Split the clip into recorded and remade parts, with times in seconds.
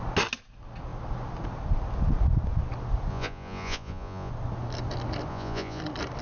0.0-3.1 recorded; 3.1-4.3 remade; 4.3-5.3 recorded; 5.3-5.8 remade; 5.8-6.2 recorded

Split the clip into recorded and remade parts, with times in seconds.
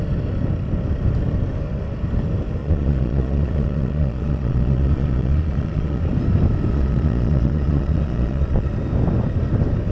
0.0-2.6 recorded; 2.6-6.0 remade; 6.0-6.7 recorded; 6.7-8.7 remade; 8.7-9.9 recorded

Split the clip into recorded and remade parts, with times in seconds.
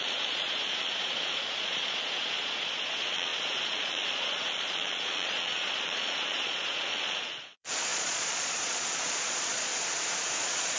0.0-9.7 remade; 9.7-10.4 recorded; 10.4-10.8 remade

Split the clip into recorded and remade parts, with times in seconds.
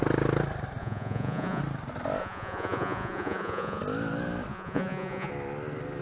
0.0-0.8 recorded; 0.8-1.6 remade; 1.6-2.2 recorded; 2.2-3.8 remade; 3.8-4.5 recorded; 4.5-5.3 remade; 5.3-6.0 recorded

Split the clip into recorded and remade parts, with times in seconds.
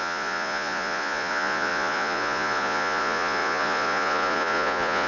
0.0-5.1 remade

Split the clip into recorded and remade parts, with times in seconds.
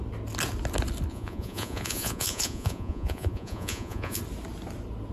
0.0-1.1 recorded; 1.1-4.2 remade; 4.2-5.1 recorded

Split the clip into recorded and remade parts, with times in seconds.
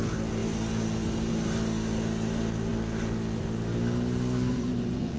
0.0-4.5 recorded; 4.5-5.2 remade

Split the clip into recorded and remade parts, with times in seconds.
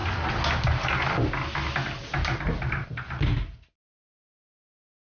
0.0-5.0 recorded